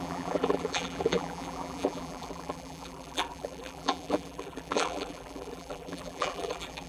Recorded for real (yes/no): no